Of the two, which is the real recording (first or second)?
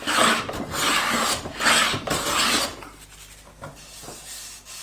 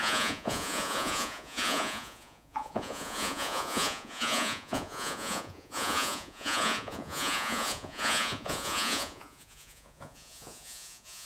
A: first